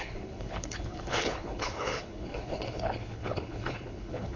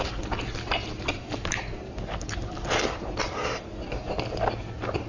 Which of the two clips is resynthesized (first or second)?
first